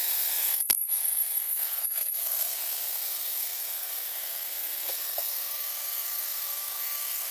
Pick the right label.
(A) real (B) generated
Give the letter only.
B